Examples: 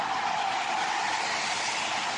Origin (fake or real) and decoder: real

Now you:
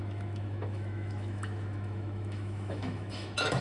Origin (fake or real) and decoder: fake, autoencoder, DAC-VAE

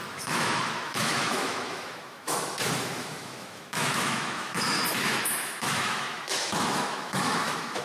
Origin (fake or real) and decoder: fake, autoencoder, DAC-VAE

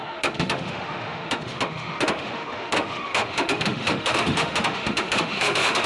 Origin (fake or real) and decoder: fake, autoencoder, DAC-VAE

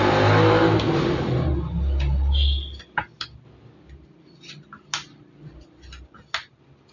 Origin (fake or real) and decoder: real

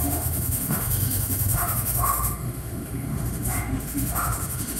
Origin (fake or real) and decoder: fake, autoencoder, DAC-VAE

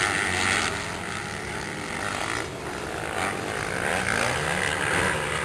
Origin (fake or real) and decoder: real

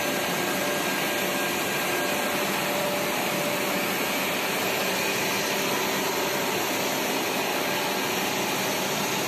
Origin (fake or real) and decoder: real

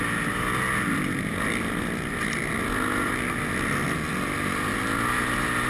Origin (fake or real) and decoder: real